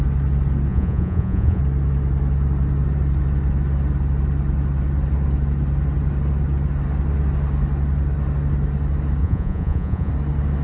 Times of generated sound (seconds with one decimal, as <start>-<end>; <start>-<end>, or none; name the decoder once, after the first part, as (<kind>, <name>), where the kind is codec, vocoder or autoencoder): 0.7-1.6 (vocoder, Vocos); 9.2-10.1